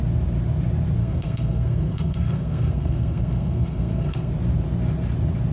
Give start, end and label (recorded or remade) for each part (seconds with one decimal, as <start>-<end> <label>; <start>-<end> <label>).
0.0-1.0 recorded; 1.0-4.3 remade; 4.3-5.5 recorded